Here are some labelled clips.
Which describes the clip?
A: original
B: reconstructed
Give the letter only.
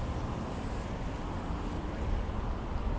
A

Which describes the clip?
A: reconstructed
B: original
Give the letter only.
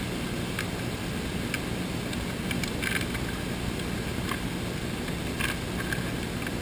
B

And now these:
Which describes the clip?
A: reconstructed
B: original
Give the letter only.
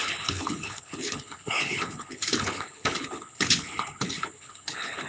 A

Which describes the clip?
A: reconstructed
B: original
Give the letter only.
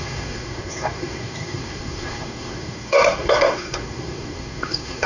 A